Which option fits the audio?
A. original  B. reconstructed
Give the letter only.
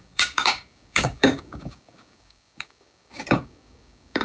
B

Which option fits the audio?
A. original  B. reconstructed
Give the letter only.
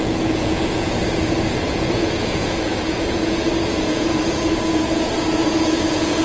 B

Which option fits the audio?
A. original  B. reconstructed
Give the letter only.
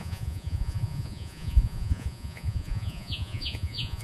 B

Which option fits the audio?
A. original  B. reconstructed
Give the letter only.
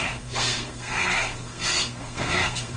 B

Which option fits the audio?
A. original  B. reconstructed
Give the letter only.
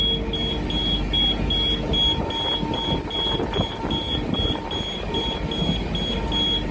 A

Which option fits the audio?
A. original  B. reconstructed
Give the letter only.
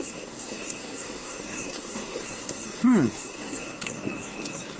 B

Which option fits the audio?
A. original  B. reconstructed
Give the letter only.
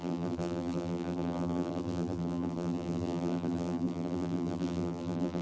B